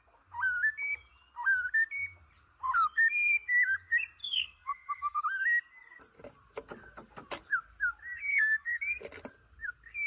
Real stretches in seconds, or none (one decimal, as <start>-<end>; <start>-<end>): 0.0-4.2; 5.2-8.3; 8.8-10.1